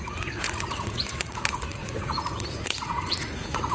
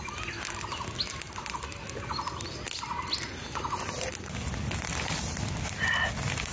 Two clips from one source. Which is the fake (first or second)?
first